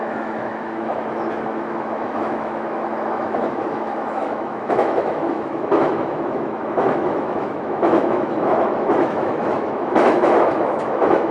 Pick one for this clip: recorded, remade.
remade